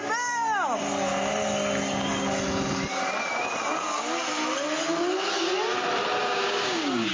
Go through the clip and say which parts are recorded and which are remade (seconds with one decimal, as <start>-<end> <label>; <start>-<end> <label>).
0.0-6.2 recorded; 6.2-7.1 remade